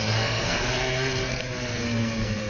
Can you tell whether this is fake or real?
fake